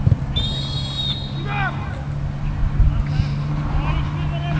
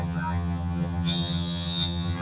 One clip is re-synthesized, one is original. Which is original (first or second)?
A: first